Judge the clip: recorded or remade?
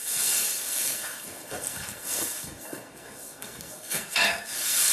remade